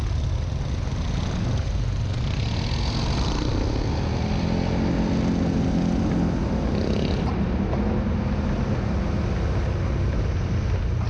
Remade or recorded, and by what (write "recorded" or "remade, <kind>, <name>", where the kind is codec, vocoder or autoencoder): recorded